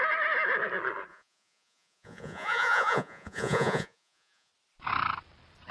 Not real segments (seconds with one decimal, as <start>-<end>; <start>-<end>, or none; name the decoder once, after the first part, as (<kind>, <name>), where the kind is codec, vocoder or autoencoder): 1.1-4.5 (vocoder, Vocos)